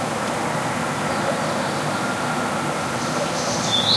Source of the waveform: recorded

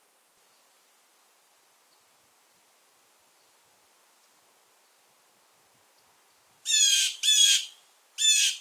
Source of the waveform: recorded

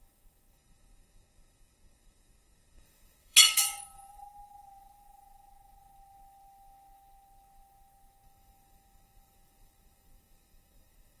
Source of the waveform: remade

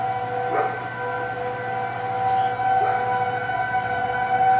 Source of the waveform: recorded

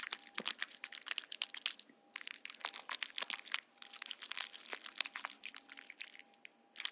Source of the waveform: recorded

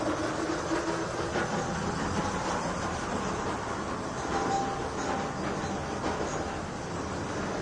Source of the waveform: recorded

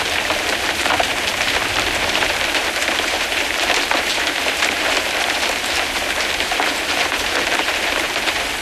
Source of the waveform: remade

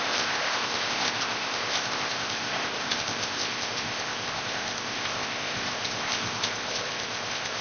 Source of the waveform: remade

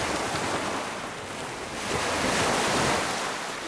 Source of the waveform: recorded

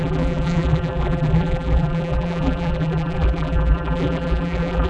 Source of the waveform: remade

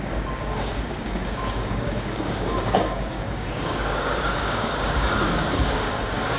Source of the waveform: remade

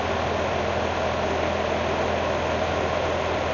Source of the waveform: recorded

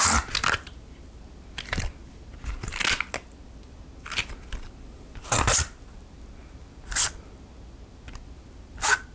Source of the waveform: recorded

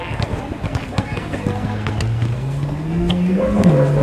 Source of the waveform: remade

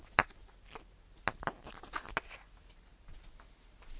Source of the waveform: recorded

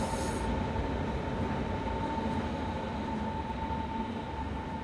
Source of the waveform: recorded